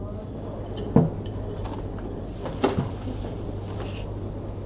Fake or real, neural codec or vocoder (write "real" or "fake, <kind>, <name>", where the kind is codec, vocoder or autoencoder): real